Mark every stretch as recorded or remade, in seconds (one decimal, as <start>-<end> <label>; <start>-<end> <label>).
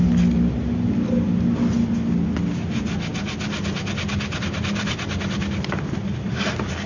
0.0-6.9 recorded